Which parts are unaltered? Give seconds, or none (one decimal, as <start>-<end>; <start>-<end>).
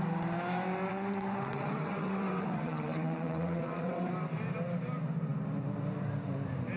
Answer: 0.0-0.9; 4.1-6.8